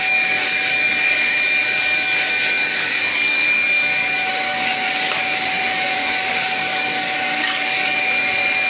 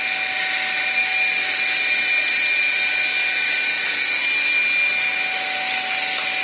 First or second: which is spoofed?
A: first